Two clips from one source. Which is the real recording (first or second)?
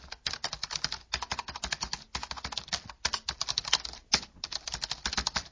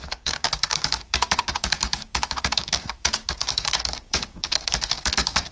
first